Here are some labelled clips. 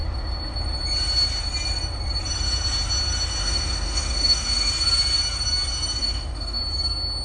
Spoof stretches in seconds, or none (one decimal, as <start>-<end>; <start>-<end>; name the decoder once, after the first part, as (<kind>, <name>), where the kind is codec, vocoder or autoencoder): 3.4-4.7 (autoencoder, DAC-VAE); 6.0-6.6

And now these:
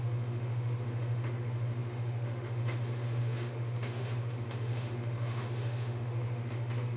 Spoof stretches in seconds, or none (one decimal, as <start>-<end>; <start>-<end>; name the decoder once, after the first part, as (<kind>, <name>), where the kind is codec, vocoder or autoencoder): 0.0-7.0 (autoencoder, DAC-VAE)

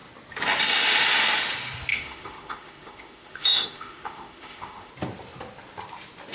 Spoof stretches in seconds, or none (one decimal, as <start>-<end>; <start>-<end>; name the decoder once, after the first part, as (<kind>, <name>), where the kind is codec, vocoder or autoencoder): 1.9-4.9 (autoencoder, DAC-VAE)